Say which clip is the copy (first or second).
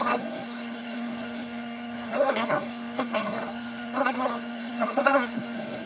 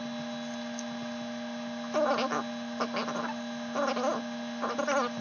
first